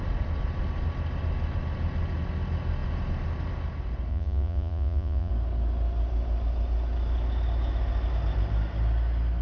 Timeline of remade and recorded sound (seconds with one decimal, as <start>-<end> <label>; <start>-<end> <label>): 0.0-4.1 recorded; 4.1-5.3 remade; 5.3-9.4 recorded